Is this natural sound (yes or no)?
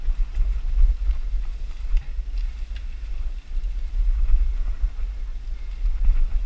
yes